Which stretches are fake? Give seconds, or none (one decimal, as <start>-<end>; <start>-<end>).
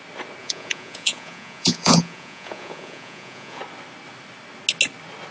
0.4-3.6